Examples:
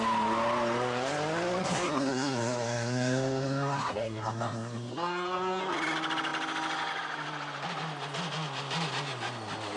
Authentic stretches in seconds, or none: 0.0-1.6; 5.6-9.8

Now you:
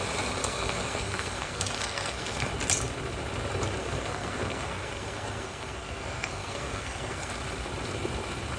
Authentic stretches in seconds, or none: 0.0-0.4; 2.5-3.8; 7.3-8.6